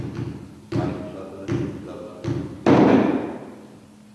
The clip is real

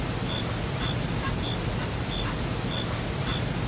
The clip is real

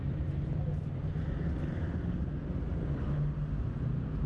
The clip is real